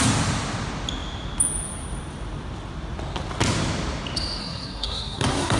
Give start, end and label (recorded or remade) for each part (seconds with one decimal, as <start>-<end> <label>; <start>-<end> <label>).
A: 0.0-4.4 recorded; 4.4-5.6 remade